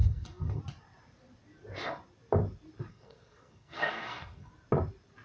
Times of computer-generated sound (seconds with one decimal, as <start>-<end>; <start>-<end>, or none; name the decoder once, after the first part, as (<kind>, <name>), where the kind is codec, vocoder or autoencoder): 0.0-0.6 (codec, SNAC); 2.9-4.5